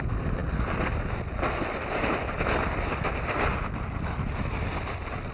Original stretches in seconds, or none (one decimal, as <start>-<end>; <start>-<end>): 0.0-5.3